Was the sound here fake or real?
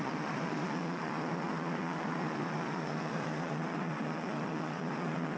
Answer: fake